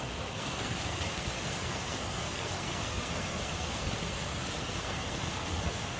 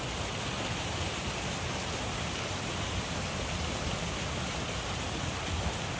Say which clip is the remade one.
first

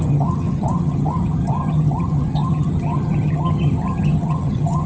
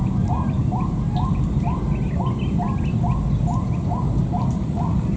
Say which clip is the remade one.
first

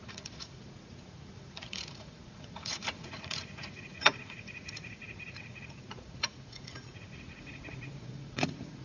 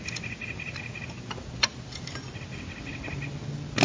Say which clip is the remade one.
first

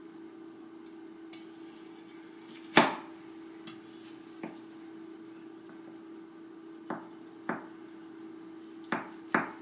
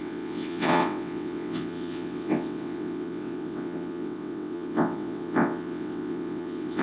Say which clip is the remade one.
second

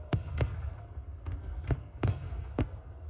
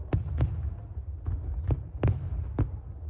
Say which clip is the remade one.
first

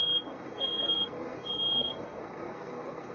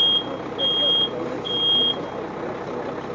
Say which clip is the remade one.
first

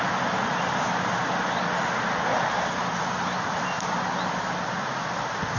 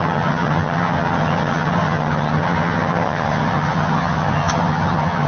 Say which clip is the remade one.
second